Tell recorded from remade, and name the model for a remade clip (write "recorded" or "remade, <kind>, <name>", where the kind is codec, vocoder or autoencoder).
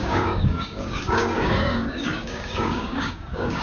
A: remade, codec, DAC